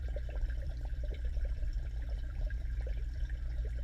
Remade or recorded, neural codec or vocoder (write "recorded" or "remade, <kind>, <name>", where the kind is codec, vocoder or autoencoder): remade, vocoder, BigVGAN v2